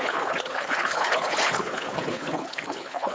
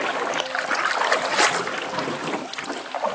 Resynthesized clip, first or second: first